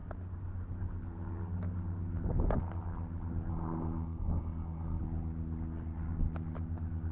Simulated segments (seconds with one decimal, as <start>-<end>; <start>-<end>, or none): 3.5-5.0